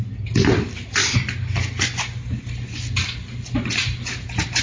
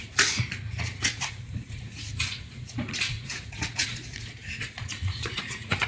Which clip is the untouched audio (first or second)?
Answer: first